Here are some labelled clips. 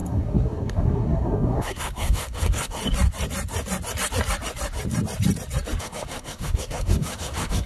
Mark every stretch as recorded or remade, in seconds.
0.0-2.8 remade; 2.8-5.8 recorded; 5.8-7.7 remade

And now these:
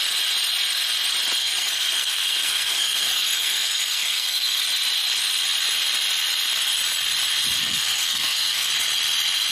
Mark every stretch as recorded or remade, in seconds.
0.0-1.4 recorded; 1.4-4.6 remade; 4.6-7.6 recorded; 7.6-8.7 remade; 8.7-9.5 recorded

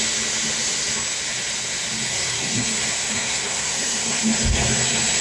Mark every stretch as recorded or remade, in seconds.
0.0-2.1 recorded; 2.1-2.7 remade; 2.7-3.1 recorded; 3.1-4.2 remade; 4.2-5.2 recorded

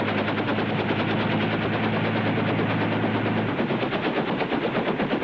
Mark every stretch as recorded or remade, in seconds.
0.0-5.2 recorded

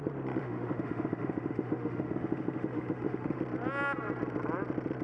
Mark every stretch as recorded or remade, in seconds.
0.0-0.4 recorded; 0.4-3.4 remade; 3.4-5.0 recorded

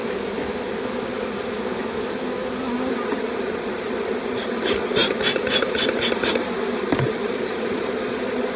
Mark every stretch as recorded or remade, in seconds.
0.0-5.0 recorded; 5.0-7.9 remade; 7.9-8.6 recorded

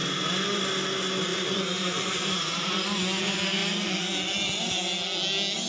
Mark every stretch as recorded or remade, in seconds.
0.0-1.3 recorded; 1.3-2.7 remade; 2.7-5.7 recorded